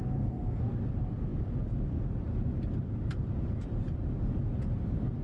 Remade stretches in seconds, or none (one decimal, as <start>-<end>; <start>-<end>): 0.0-0.6